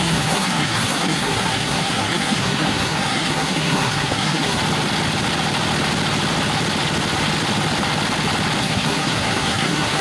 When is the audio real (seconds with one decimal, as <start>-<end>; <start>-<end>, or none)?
4.6-8.6